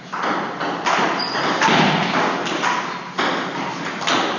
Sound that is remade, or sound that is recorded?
recorded